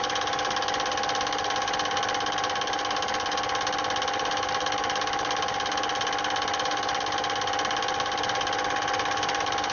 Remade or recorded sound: recorded